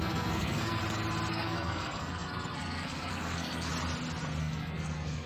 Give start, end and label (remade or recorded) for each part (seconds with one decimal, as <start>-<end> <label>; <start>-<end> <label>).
0.0-0.8 remade; 0.8-1.3 recorded; 1.3-3.7 remade; 3.7-4.4 recorded; 4.4-5.3 remade